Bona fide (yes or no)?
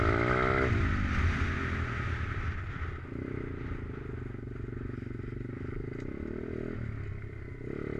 yes